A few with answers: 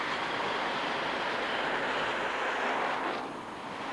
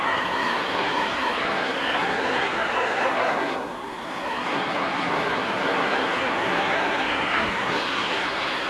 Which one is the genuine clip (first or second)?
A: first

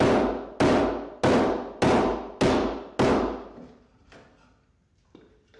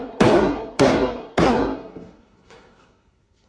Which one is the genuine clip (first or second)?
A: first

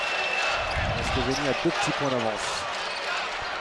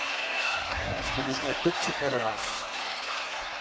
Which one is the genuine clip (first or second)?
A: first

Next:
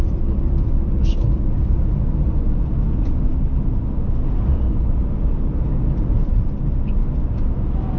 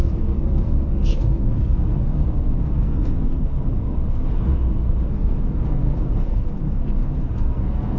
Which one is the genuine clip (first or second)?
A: first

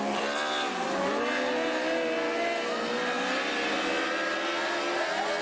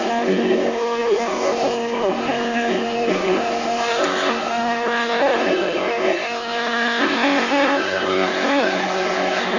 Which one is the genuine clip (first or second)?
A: first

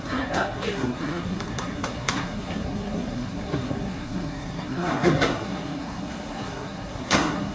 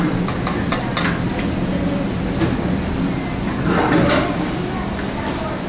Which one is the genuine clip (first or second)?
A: second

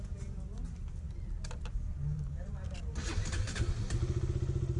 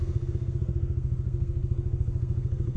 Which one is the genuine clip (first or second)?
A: first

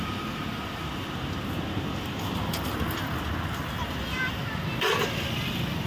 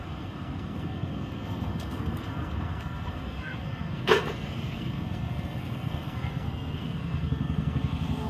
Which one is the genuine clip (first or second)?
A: first